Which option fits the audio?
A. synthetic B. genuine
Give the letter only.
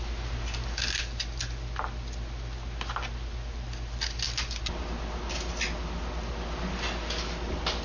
B